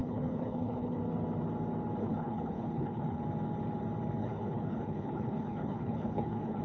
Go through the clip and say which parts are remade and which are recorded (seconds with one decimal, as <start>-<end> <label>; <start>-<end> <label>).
0.0-1.0 remade; 1.0-2.0 recorded; 2.0-3.2 remade; 3.2-4.2 recorded; 4.2-6.6 remade